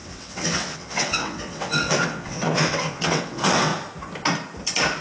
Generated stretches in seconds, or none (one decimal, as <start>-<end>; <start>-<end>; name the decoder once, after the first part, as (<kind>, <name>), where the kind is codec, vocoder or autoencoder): 0.0-3.7 (vocoder, WaveNeXt)